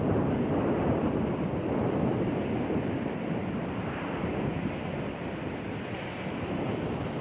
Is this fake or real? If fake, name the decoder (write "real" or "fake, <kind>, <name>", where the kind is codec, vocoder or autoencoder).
fake, vocoder, BigVGAN v2